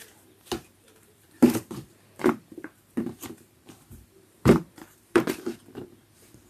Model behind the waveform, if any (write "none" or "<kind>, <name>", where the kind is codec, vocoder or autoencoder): vocoder, BigVGAN v2